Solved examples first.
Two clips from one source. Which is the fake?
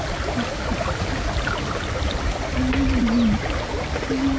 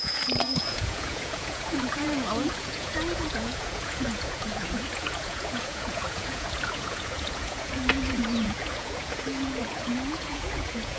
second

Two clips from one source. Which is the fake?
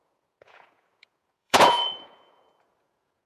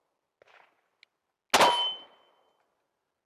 first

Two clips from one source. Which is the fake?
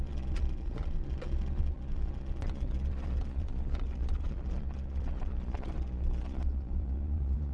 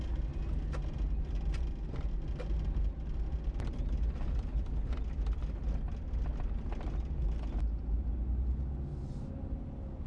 first